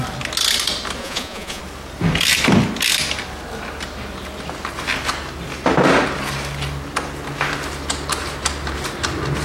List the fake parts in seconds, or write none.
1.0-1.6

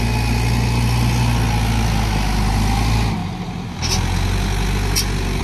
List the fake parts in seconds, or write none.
none

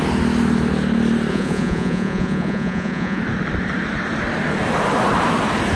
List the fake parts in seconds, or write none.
1.3-3.2

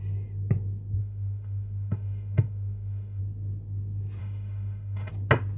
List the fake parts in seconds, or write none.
1.0-3.2; 4.2-5.1

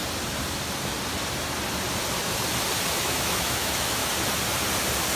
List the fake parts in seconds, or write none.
3.0-4.0

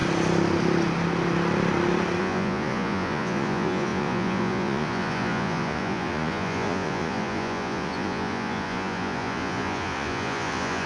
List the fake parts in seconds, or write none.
2.2-10.9

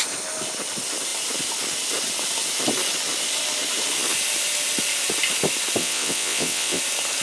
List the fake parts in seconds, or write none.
5.8-6.8